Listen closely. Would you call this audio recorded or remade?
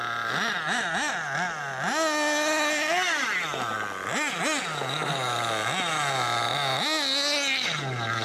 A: recorded